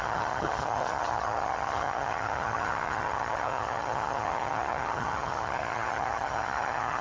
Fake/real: fake